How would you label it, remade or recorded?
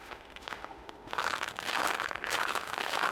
remade